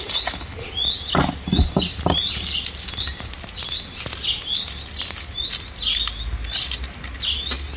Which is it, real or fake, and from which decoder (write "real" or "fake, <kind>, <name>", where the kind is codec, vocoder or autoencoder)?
real